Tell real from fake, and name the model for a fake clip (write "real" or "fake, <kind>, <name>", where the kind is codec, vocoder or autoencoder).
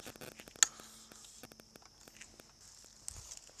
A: real